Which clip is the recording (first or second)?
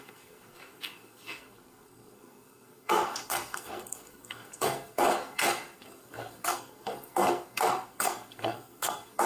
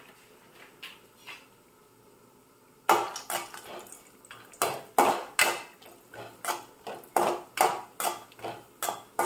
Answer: second